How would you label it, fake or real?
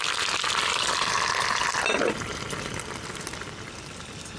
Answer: real